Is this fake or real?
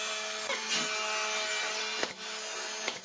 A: real